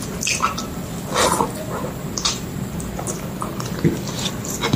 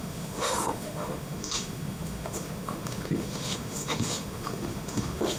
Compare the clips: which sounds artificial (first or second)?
second